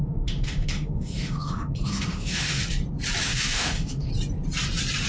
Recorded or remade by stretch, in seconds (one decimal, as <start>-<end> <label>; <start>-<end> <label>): 0.0-2.6 remade; 2.6-3.2 recorded; 3.2-4.1 remade; 4.1-5.1 recorded